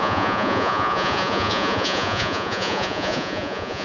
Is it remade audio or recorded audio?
remade